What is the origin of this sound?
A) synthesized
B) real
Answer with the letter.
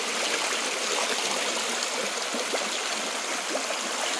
B